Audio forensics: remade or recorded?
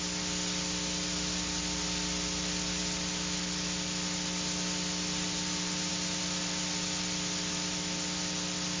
recorded